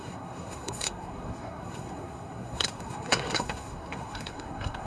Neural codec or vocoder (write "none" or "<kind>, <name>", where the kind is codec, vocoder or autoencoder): codec, SNAC